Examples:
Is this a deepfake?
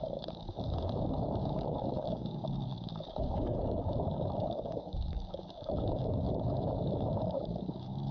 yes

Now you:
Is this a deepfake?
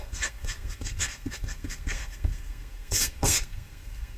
yes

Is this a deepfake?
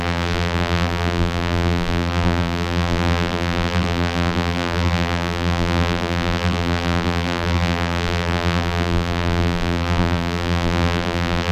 yes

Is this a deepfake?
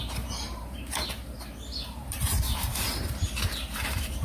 yes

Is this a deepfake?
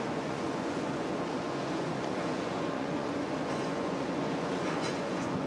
yes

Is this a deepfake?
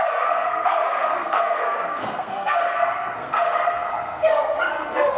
yes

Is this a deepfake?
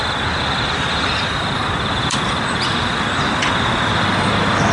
yes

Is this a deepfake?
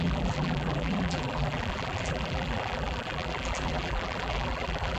yes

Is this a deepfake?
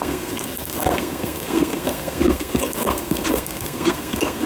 yes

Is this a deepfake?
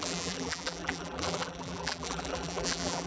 yes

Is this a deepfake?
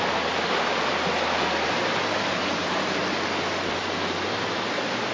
no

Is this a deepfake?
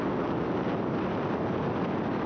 no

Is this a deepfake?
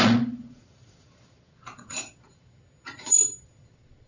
yes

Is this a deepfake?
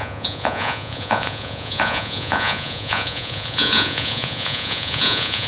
yes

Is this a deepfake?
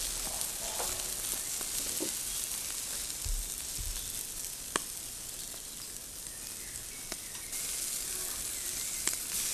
no